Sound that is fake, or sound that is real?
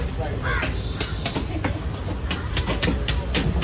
real